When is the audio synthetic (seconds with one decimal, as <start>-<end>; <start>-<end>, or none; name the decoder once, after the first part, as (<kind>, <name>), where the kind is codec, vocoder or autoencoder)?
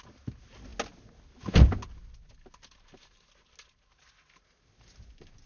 none